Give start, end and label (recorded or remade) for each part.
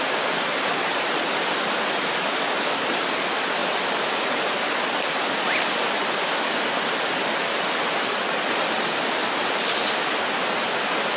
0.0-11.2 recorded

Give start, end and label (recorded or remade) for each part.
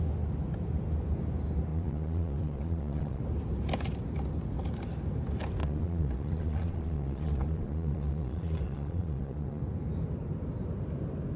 0.0-1.7 recorded; 1.7-3.2 remade; 3.2-5.6 recorded; 5.6-9.6 remade; 9.6-11.4 recorded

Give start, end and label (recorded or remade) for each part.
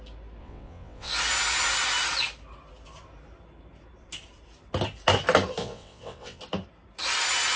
0.0-0.4 recorded; 0.4-1.1 remade; 1.1-5.6 recorded; 5.6-6.4 remade; 6.4-7.6 recorded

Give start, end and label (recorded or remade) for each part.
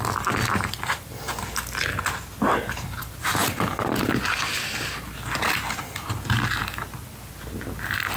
0.0-8.2 recorded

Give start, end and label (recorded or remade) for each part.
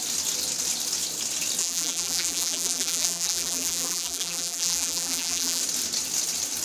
0.0-1.6 recorded; 1.6-5.6 remade; 5.6-6.6 recorded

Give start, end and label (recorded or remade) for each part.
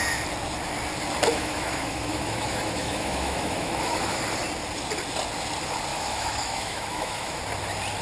0.0-1.3 recorded; 1.3-4.2 remade; 4.2-5.9 recorded; 5.9-7.4 remade; 7.4-8.0 recorded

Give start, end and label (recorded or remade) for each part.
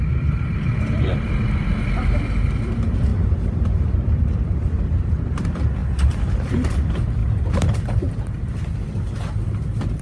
0.0-3.1 recorded; 3.1-3.8 remade; 3.8-7.2 recorded; 7.2-7.7 remade; 7.7-10.0 recorded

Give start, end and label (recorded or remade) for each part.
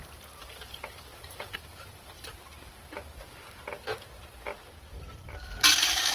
0.0-2.3 remade; 2.3-6.1 recorded